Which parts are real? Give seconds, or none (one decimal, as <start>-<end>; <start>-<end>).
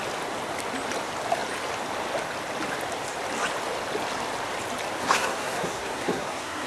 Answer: 0.0-5.0